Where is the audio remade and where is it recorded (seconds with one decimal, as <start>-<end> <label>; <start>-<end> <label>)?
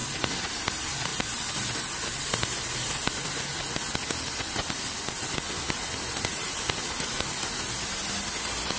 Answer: 0.0-8.8 recorded